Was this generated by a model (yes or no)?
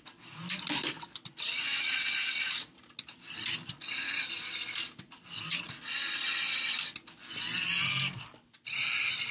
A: no